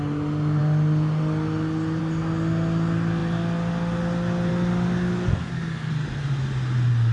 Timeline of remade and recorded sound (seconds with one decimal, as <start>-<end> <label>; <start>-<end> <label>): 0.0-5.3 recorded; 5.3-5.9 remade; 5.9-7.1 recorded